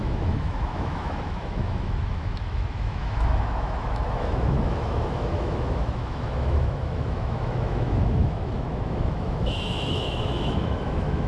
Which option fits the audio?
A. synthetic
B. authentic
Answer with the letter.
A